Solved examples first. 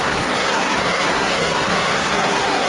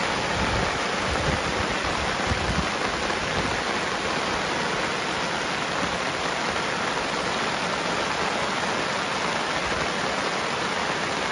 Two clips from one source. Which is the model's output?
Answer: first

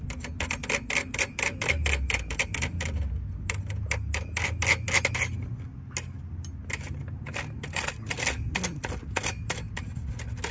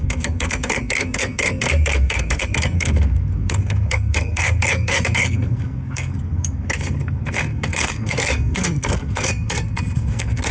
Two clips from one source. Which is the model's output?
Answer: second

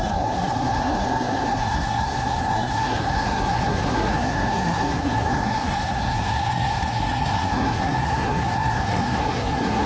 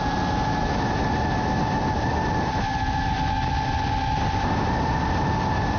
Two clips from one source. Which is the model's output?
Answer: first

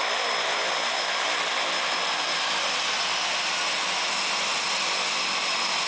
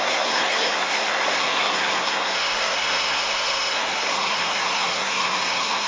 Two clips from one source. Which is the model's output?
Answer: second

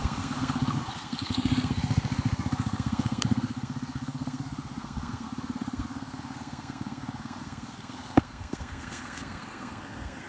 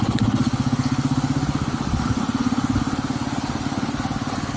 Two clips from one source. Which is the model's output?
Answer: first